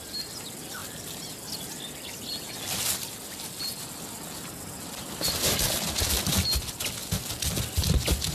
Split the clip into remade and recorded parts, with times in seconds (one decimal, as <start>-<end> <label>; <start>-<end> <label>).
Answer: 0.0-8.3 recorded